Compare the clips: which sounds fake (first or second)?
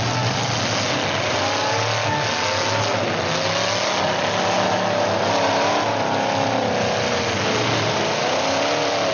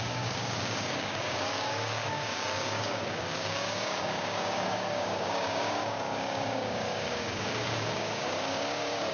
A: second